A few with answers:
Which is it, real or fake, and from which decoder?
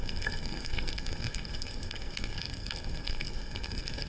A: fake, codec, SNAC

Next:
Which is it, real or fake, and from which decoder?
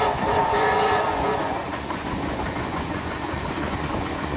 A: fake, vocoder, Vocos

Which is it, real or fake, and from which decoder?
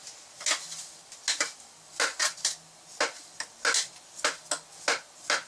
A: real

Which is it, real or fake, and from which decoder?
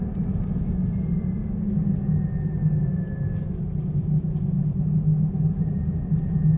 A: real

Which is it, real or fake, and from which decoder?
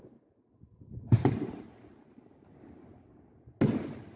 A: real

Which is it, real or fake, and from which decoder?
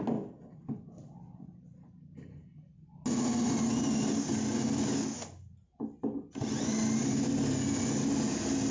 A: real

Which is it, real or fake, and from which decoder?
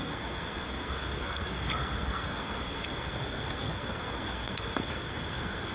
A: fake, codec, SNAC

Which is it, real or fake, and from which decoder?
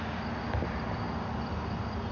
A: real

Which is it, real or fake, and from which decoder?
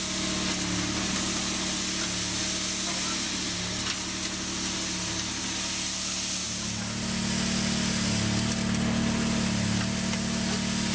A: real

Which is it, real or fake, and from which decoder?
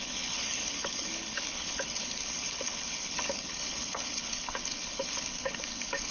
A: fake, codec, HILCodec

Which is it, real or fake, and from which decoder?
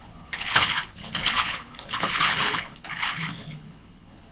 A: fake, codec, HILCodec